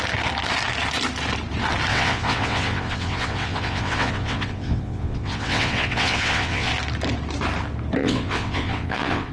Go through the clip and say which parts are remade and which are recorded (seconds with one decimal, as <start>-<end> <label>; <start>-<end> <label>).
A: 0.0-1.9 recorded; 1.9-6.7 remade; 6.7-8.0 recorded; 8.0-9.3 remade